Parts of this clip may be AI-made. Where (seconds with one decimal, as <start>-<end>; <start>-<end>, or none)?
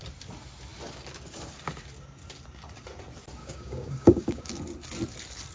3.4-4.5